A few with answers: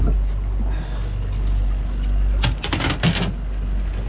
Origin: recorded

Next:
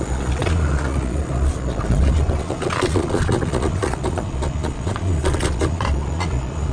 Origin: remade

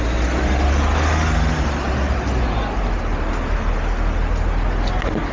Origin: recorded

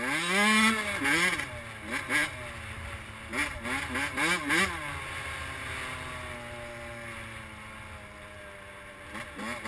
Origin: recorded